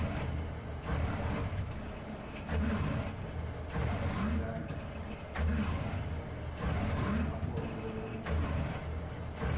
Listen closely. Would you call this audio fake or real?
real